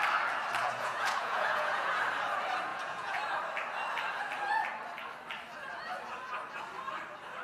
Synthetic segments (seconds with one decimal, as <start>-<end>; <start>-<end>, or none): 0.6-2.0; 2.7-3.2